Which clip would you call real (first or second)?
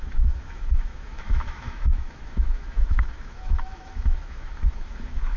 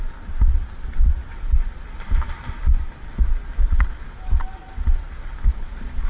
second